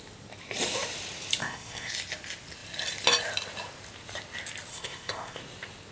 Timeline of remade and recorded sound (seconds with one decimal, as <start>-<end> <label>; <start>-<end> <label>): 0.0-1.4 recorded; 1.4-1.9 remade; 1.9-4.7 recorded; 4.7-5.4 remade; 5.4-5.9 recorded